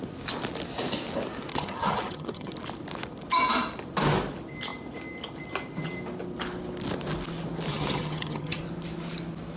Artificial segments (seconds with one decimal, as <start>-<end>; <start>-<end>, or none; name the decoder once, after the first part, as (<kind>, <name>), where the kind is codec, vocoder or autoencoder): 1.5-2.5 (vocoder, HiFi-GAN); 7.7-8.6